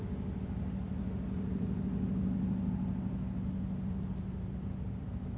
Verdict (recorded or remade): recorded